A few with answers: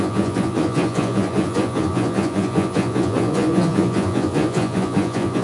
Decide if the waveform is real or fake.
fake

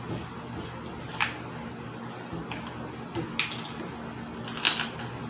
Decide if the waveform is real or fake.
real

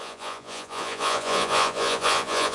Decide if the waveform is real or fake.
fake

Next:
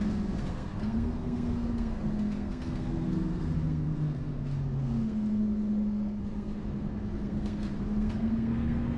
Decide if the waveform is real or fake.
fake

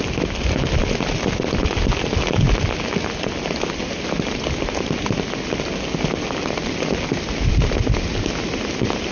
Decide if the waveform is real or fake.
real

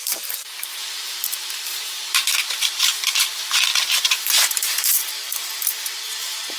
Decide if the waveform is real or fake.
fake